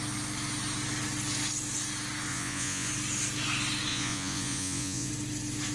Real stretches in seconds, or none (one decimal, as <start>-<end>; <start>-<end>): 0.0-2.3; 2.9-3.9; 5.1-5.7